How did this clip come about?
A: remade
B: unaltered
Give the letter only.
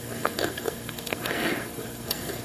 A